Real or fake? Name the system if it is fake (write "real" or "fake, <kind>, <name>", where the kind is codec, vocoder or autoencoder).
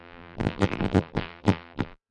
fake, vocoder, BigVGAN v2